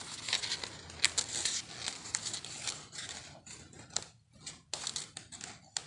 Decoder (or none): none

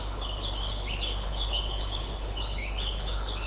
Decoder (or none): codec, HILCodec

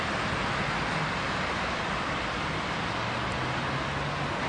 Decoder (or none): none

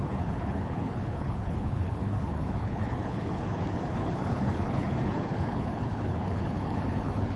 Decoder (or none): codec, HILCodec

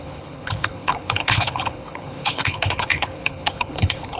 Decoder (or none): codec, HILCodec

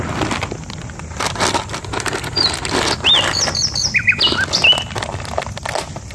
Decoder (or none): none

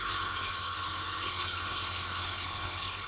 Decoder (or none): codec, HILCodec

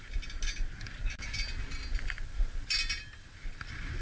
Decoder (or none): none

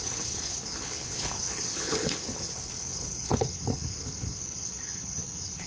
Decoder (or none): codec, HILCodec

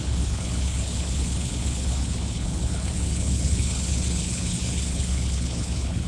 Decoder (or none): codec, HILCodec